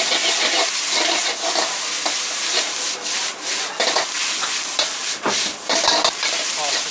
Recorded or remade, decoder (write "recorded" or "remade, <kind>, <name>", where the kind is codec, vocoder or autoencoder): recorded